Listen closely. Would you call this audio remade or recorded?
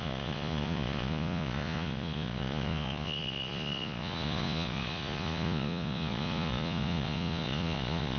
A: remade